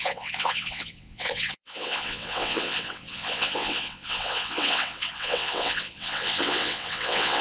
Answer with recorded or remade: remade